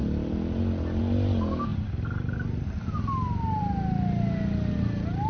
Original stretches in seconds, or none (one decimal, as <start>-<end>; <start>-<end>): 0.0-5.3